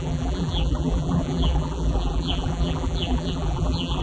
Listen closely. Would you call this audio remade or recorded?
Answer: remade